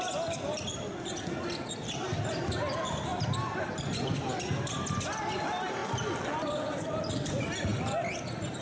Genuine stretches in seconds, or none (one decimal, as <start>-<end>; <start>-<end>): 0.0-8.6